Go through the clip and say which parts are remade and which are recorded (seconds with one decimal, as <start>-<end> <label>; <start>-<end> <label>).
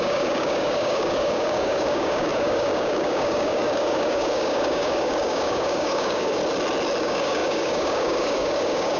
0.0-6.4 remade; 6.4-7.0 recorded; 7.0-9.0 remade